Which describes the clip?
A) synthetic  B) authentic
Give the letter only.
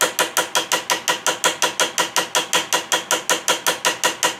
B